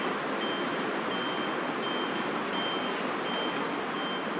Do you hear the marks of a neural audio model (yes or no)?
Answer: no